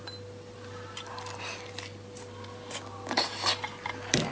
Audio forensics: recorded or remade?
recorded